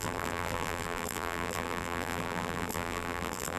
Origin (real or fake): fake